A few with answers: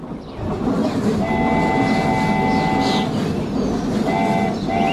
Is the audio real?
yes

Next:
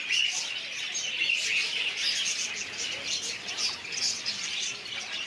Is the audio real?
yes